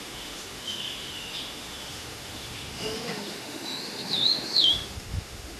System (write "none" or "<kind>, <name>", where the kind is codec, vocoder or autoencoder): autoencoder, DAC-VAE